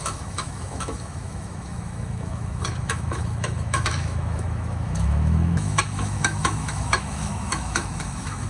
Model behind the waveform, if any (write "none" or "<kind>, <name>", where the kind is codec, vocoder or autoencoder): autoencoder, DAC-VAE